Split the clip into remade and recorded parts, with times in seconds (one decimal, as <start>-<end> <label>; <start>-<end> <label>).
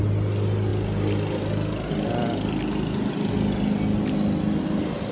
0.0-5.1 recorded